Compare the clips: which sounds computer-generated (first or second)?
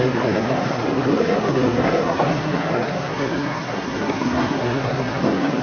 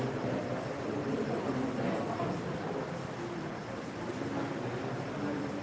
first